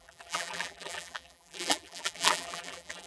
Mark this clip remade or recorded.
remade